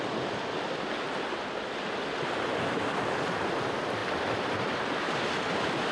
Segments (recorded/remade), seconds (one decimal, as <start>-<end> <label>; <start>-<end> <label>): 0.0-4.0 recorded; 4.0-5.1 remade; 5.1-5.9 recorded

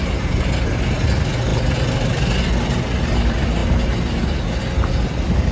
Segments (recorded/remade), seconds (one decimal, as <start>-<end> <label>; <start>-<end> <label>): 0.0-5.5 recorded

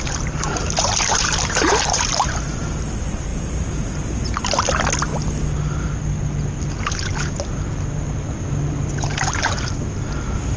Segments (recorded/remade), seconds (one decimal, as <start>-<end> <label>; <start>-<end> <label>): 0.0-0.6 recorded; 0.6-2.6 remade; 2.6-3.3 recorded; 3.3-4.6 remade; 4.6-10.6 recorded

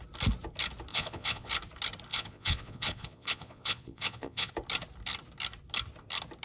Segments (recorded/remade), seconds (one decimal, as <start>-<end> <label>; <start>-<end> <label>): 0.0-0.9 recorded; 0.9-1.5 remade; 1.5-2.1 recorded; 2.1-4.5 remade; 4.5-6.4 recorded

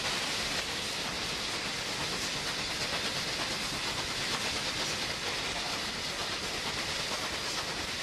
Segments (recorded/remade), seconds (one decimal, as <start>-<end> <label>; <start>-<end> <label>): 0.0-6.2 recorded; 6.2-7.0 remade; 7.0-8.0 recorded

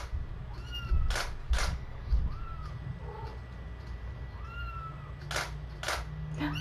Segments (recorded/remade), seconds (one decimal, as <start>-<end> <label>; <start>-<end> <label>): 0.0-1.4 recorded; 1.4-2.2 remade; 2.2-6.6 recorded

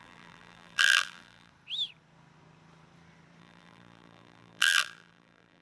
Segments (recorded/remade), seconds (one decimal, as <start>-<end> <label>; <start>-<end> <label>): 0.0-1.5 remade; 1.5-3.4 recorded; 3.4-5.6 remade